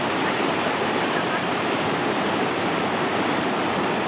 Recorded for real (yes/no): no